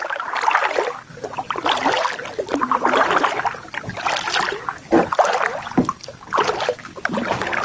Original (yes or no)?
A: yes